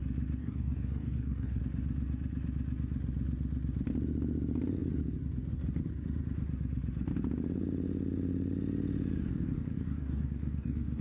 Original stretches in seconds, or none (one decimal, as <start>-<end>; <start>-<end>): 0.0-0.4; 1.6-9.3